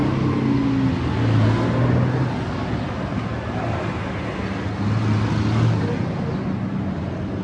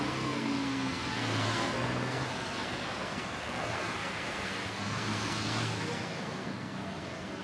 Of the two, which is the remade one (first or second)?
second